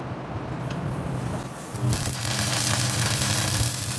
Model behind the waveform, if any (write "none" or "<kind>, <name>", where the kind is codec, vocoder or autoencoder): none